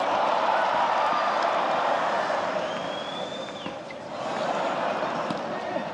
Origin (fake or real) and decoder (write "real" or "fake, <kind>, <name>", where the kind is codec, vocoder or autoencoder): real